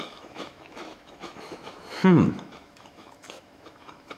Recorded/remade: remade